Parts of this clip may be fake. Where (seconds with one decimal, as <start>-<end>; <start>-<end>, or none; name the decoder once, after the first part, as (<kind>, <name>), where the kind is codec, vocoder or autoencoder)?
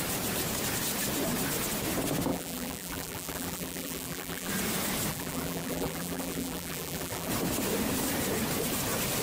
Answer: 2.3-4.5 (vocoder, BigVGAN v2); 5.1-7.3